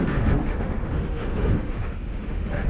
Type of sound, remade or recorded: remade